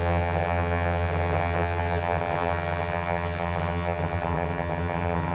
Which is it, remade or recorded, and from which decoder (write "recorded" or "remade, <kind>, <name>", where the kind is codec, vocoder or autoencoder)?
remade, vocoder, HiFi-GAN